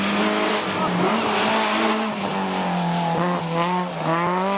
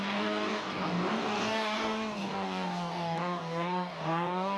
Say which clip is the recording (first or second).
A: first